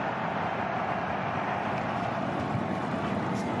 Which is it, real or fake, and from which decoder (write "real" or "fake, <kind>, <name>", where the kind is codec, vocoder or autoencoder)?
real